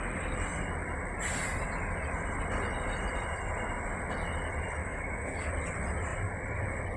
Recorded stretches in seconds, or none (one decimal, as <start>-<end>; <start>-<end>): 0.0-4.8; 5.5-7.0